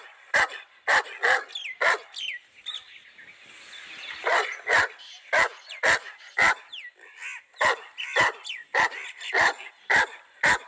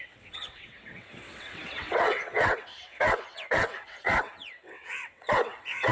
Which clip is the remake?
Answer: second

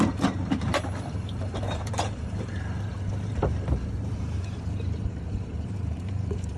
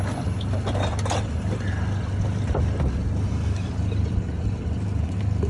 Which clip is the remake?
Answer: first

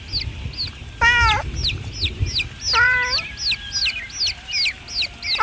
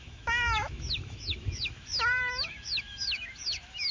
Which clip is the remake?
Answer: second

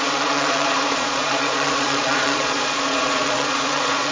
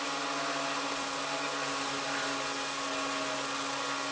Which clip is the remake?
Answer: first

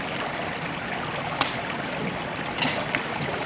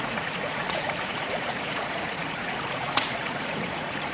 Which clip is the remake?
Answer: second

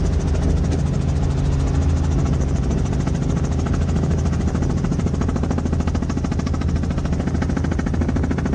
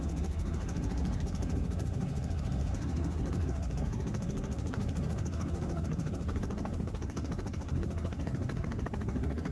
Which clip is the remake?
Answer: second